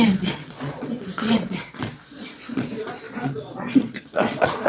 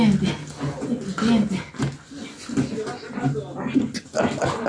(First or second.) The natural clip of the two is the second